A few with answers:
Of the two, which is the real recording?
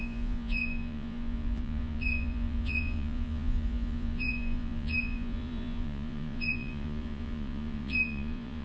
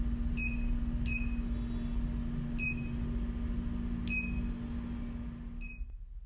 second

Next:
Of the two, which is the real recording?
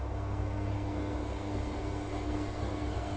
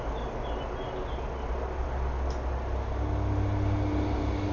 second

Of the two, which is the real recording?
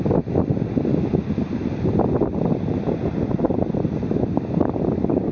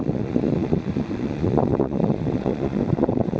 first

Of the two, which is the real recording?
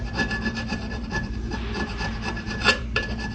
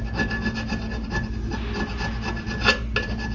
second